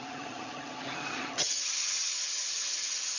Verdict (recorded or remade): remade